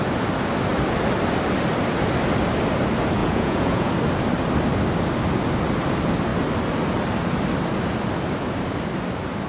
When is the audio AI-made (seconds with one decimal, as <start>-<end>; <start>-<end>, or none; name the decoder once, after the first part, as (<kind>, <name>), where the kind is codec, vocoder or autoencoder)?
3.2-3.9 (vocoder, Vocos)